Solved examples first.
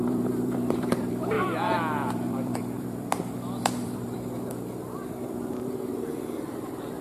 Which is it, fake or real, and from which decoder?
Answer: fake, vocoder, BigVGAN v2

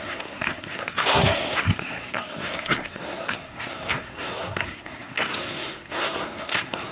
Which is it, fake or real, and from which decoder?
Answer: fake, codec, SNAC